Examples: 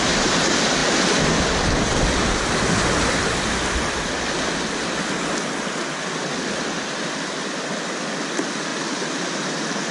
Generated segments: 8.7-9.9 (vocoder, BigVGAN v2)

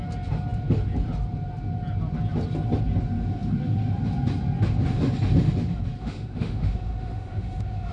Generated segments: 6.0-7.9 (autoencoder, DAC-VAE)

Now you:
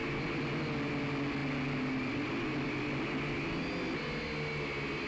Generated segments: none

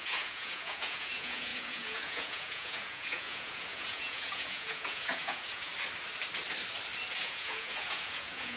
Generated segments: 0.0-5.7 (vocoder, Vocos); 7.2-8.6